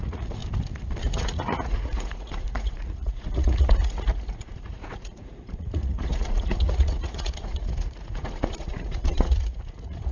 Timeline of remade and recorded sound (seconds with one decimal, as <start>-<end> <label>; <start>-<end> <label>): 0.0-0.4 remade; 0.4-1.0 recorded; 1.0-10.1 remade